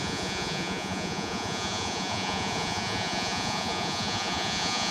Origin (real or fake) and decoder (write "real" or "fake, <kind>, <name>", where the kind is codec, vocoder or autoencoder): fake, vocoder, Vocos